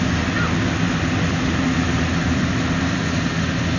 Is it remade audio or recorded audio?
recorded